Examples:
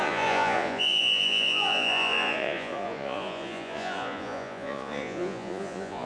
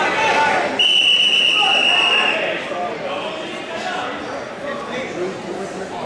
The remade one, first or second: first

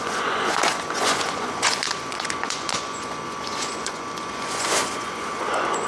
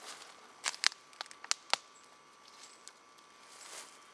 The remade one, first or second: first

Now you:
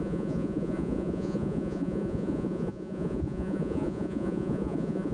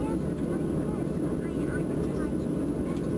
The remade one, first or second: first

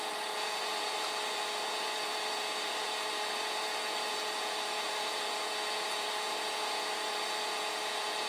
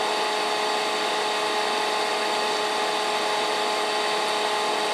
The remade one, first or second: first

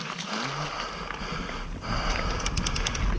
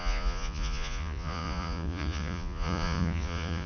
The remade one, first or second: second